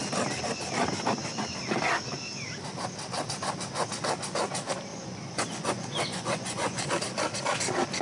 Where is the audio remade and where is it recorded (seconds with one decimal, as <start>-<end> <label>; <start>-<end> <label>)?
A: 0.0-4.9 recorded; 4.9-6.9 remade; 6.9-8.0 recorded